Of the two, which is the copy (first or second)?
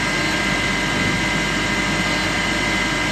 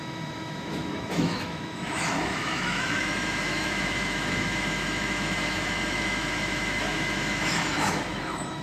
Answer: second